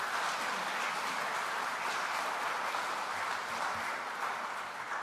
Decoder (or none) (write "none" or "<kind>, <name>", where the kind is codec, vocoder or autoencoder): none